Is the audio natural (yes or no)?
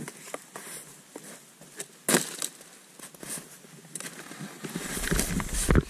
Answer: yes